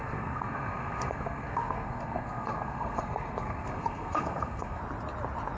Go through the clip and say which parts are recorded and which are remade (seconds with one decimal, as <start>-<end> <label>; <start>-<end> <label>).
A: 0.0-4.8 remade; 4.8-5.6 recorded